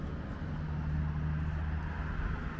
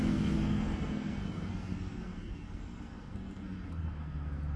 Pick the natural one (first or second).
first